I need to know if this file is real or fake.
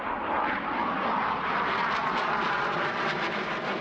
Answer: real